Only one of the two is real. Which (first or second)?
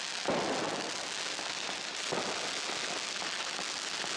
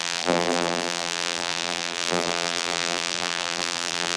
first